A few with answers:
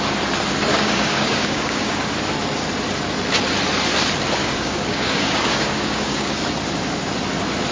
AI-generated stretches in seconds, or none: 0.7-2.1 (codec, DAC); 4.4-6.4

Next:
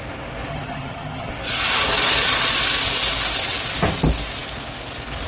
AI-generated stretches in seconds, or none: 0.5-1.3 (vocoder, HiFi-GAN)

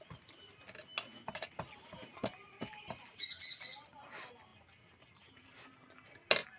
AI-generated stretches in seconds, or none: 2.1-2.8 (vocoder, BigVGAN v2)

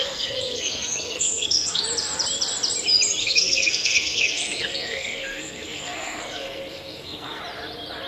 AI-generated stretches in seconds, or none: 0.0-1.8 (codec, SNAC); 3.2-7.4

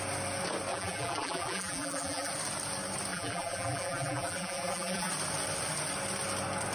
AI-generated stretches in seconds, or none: 0.7-2.3 (vocoder, BigVGAN v2); 3.1-5.1

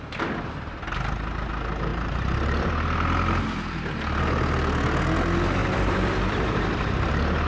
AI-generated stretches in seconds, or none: 1.9-2.7 (vocoder, BigVGAN v2); 5.6-7.5

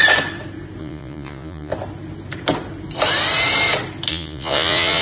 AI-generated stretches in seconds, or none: 0.8-1.7 (vocoder, Vocos); 4.1-5.0